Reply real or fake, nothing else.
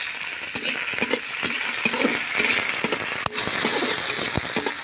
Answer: real